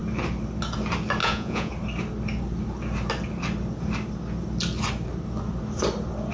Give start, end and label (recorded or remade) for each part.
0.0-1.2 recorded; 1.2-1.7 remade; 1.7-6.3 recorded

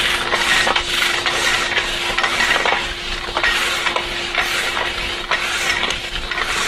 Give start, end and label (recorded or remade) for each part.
0.0-6.7 recorded

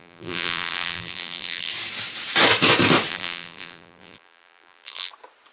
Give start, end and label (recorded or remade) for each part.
0.0-1.7 remade; 1.7-3.1 recorded; 3.1-5.1 remade; 5.1-5.5 recorded

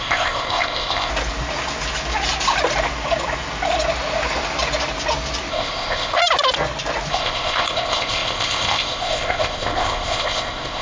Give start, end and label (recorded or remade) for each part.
0.0-1.1 remade; 1.1-5.5 recorded; 5.5-6.2 remade; 6.2-7.1 recorded; 7.1-10.8 remade

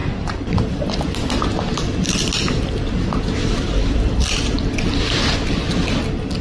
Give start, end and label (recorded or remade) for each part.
0.0-6.4 recorded

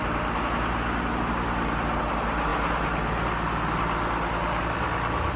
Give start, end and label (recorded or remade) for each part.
0.0-5.4 recorded

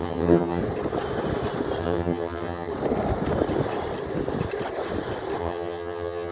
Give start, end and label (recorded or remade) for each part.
0.0-0.6 remade; 0.6-1.8 recorded; 1.8-2.7 remade; 2.7-5.4 recorded; 5.4-6.3 remade

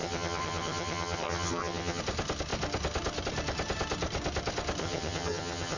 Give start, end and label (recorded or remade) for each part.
0.0-2.0 remade; 2.0-4.8 recorded; 4.8-5.8 remade